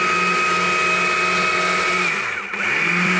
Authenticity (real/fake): real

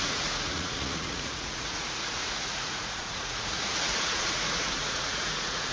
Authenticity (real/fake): fake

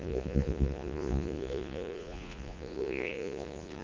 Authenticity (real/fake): fake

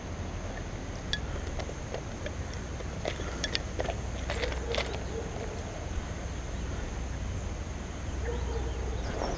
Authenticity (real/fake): real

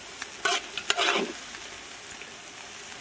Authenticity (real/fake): real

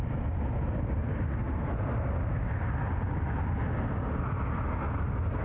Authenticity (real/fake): real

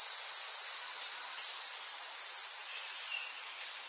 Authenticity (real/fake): real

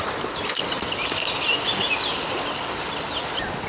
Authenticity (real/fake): real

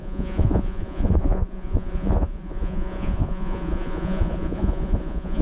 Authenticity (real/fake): fake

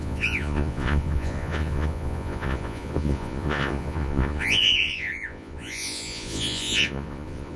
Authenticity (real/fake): fake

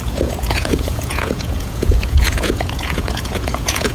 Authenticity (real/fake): fake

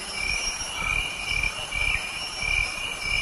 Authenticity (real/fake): real